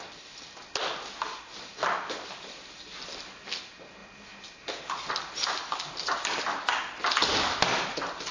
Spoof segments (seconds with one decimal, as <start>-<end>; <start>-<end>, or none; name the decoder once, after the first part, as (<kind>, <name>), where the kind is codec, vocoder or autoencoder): none